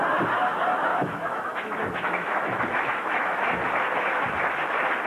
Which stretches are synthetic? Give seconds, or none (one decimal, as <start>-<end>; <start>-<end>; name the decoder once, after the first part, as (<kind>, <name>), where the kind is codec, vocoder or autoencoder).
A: 0.9-3.6 (autoencoder, DAC-VAE)